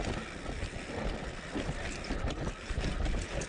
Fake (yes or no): no